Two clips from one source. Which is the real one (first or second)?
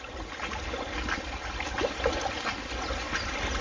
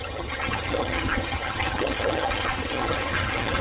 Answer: first